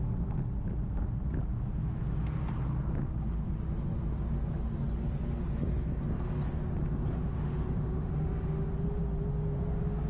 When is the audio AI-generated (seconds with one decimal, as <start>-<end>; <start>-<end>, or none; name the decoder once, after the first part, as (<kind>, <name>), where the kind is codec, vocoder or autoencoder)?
7.1-8.7 (autoencoder, DAC-VAE)